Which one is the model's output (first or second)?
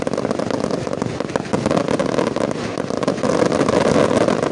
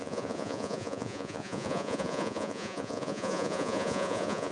second